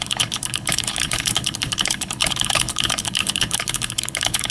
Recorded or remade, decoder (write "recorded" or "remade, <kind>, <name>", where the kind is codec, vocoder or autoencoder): remade, codec, HILCodec